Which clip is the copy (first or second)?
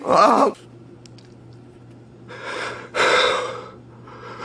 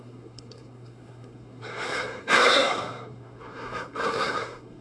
second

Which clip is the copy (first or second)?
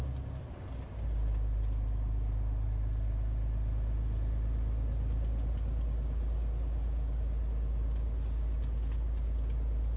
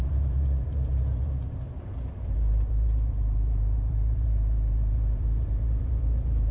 second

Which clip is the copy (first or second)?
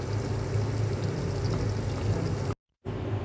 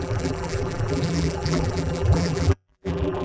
second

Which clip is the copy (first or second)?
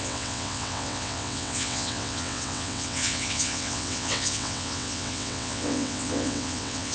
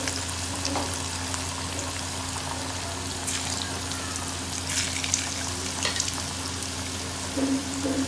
first